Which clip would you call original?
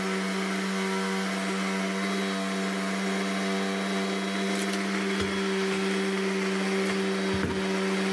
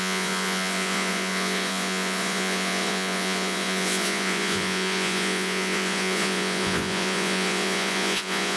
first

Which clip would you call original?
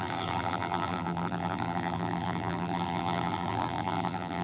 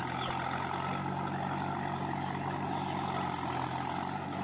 second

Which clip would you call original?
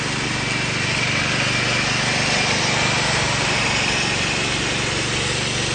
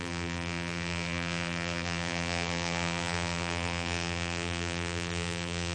first